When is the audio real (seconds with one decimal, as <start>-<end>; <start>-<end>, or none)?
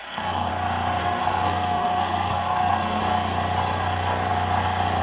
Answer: 0.5-1.0; 3.0-5.0